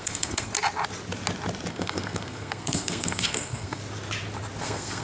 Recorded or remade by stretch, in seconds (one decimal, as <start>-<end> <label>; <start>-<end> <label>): 0.0-0.5 remade; 0.5-1.7 recorded; 1.7-3.8 remade; 3.8-4.6 recorded; 4.6-5.0 remade